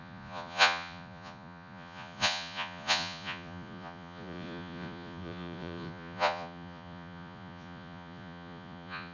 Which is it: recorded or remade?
remade